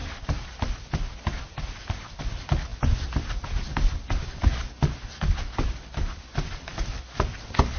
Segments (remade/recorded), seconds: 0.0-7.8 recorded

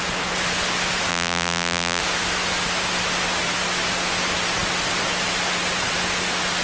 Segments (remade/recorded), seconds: 0.0-1.1 recorded; 1.1-2.0 remade; 2.0-6.6 recorded

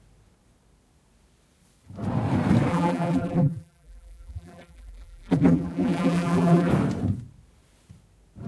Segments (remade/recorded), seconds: 0.0-2.7 recorded; 2.7-6.7 remade; 6.7-8.5 recorded

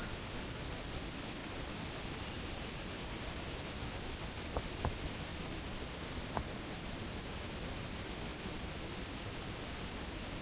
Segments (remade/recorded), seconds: 0.0-10.4 recorded

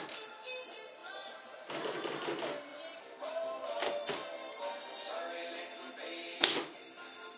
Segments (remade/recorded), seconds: 0.0-1.0 recorded; 1.0-1.7 remade; 1.7-2.7 recorded; 2.7-3.3 remade; 3.3-7.4 recorded

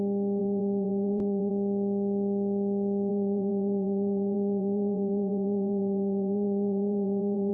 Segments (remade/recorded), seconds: 0.0-0.4 recorded; 0.4-1.5 remade; 1.5-3.1 recorded; 3.1-7.5 remade

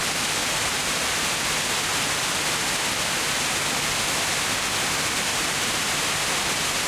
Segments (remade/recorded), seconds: 0.0-0.4 recorded; 0.4-1.1 remade; 1.1-5.3 recorded; 5.3-6.0 remade; 6.0-6.9 recorded